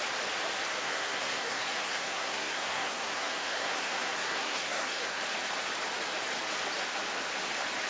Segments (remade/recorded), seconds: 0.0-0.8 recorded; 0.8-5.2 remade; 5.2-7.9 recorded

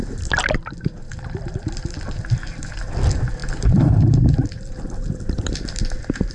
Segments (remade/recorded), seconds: 0.0-1.1 recorded; 1.1-1.7 remade; 1.7-3.4 recorded; 3.4-4.9 remade; 4.9-6.3 recorded

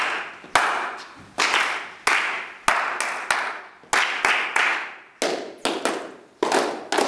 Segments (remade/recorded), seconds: 0.0-7.1 recorded

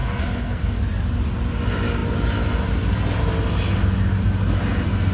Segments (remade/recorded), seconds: 0.0-0.8 remade; 0.8-5.1 recorded

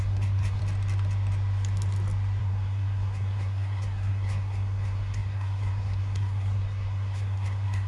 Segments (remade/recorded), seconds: 0.0-0.6 remade; 0.6-2.4 recorded; 2.4-7.9 remade